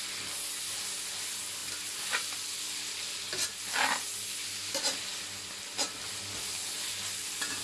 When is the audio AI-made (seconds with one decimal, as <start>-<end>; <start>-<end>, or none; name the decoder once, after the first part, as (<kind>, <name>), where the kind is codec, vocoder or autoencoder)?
none